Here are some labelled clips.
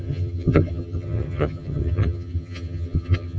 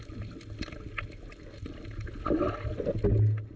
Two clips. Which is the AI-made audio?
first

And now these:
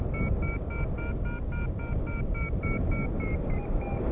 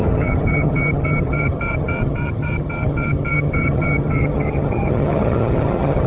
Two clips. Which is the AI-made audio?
second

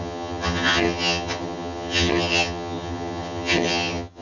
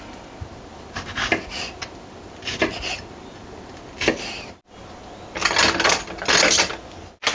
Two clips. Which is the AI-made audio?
first